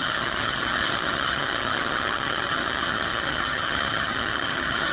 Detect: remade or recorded remade